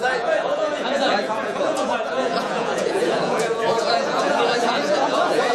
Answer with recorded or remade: remade